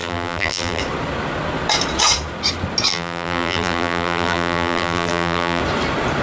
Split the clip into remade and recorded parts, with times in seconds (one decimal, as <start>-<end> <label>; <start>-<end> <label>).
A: 0.0-0.8 remade; 0.8-2.9 recorded; 2.9-5.6 remade; 5.6-6.2 recorded